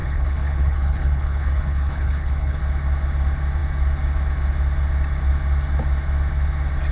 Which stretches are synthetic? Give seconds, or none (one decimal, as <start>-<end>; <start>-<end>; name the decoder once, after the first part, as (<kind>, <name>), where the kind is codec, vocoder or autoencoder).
0.0-2.6 (codec, HILCodec)